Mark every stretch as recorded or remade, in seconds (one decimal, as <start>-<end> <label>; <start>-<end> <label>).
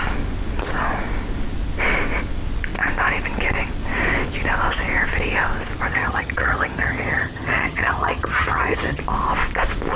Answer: 0.0-5.9 recorded; 5.9-9.0 remade; 9.0-10.0 recorded